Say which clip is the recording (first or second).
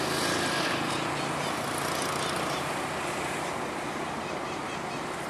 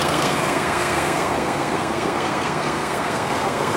first